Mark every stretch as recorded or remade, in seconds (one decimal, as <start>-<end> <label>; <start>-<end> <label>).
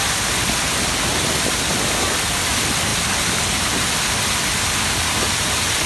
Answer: 0.0-5.9 recorded